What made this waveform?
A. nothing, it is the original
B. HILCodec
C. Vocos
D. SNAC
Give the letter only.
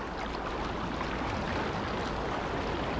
A